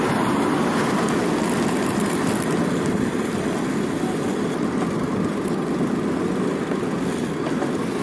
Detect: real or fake real